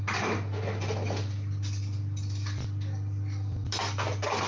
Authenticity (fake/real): real